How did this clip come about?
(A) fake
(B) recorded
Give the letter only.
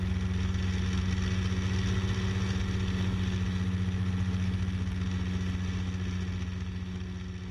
B